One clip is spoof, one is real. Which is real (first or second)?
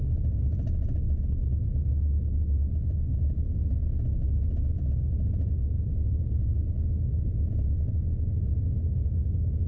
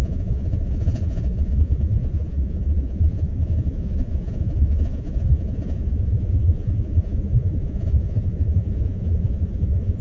first